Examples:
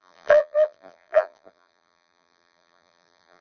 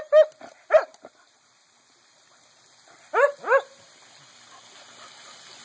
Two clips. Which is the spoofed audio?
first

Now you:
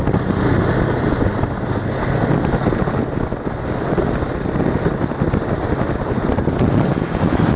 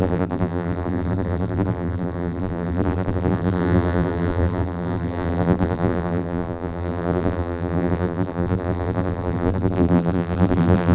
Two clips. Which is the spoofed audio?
second